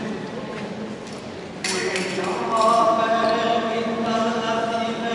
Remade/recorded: recorded